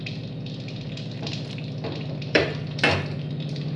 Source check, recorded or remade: remade